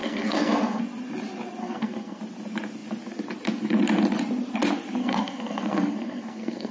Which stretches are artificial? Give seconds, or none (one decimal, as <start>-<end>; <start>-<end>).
0.0-0.8; 1.6-2.2; 5.0-6.7